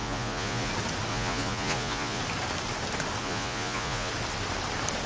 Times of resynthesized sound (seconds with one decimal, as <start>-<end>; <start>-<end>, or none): 0.0-0.7; 1.1-2.2; 3.2-4.1